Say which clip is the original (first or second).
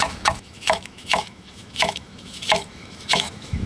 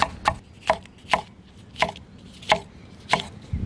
second